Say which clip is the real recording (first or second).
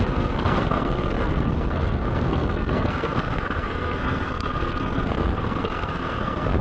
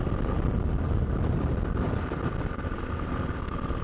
second